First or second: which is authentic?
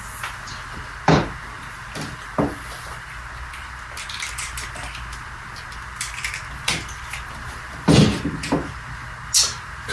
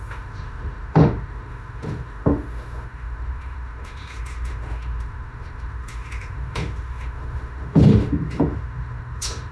first